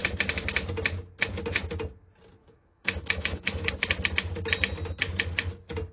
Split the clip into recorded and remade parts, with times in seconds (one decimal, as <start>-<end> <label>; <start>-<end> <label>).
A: 0.0-2.4 recorded; 2.4-3.7 remade; 3.7-5.9 recorded